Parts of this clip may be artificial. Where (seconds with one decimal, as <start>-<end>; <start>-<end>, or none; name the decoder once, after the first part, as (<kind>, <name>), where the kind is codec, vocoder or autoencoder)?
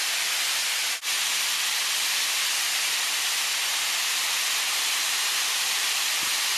4.2-6.1 (vocoder, BigVGAN v2)